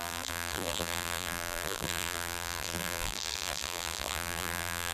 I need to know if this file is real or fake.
fake